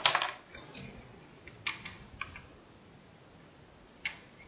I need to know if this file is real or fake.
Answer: real